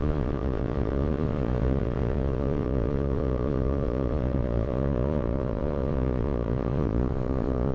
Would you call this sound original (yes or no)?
no